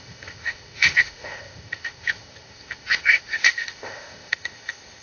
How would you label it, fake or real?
fake